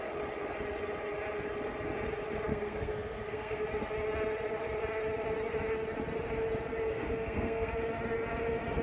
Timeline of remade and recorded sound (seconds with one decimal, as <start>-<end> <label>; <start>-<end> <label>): 0.0-2.5 recorded; 2.5-3.6 remade; 3.6-6.9 recorded; 6.9-7.7 remade; 7.7-8.8 recorded